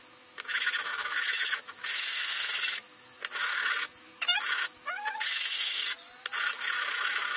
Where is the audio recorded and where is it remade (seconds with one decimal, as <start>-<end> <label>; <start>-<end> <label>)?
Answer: 0.0-5.8 remade; 5.8-6.5 recorded; 6.5-7.4 remade